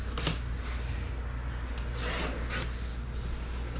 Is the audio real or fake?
real